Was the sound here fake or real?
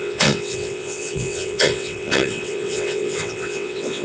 fake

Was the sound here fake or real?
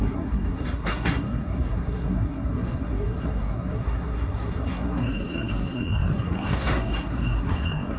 fake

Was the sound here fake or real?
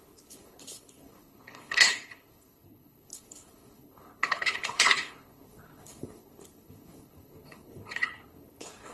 fake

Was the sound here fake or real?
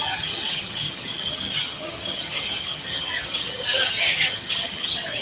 fake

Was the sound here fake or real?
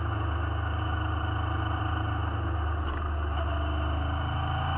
real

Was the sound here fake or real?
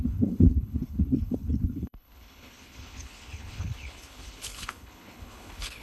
fake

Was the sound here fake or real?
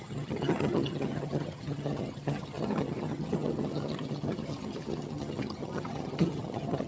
fake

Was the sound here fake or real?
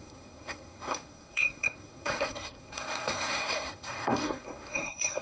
fake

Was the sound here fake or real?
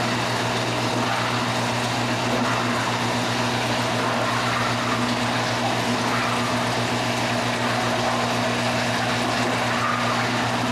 real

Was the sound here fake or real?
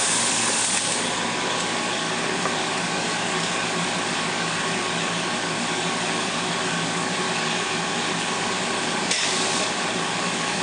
fake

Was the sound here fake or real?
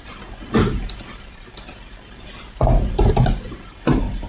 real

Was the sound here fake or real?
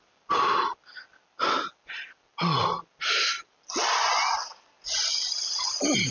real